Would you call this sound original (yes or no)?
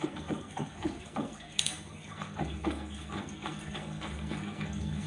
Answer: no